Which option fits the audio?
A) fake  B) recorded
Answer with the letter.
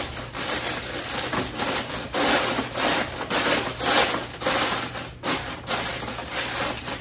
B